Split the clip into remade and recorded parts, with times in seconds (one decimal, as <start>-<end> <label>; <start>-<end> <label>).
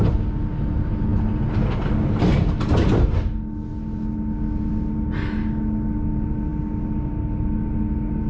0.0-8.3 recorded